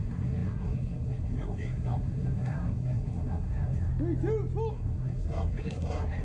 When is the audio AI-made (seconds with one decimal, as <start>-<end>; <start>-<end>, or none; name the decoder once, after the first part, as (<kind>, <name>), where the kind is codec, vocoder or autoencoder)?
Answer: 0.0-3.9 (codec, SNAC); 4.7-6.2